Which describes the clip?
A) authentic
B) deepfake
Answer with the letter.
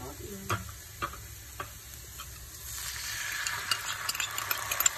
A